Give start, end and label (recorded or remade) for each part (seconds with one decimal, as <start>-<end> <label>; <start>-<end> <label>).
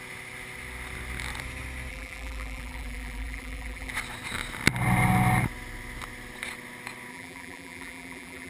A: 0.0-1.9 recorded; 1.9-3.9 remade; 3.9-7.1 recorded; 7.1-8.5 remade